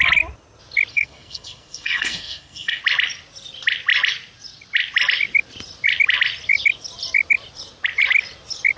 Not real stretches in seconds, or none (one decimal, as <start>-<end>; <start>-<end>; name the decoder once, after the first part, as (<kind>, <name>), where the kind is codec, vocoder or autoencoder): 0.9-2.8 (codec, SNAC)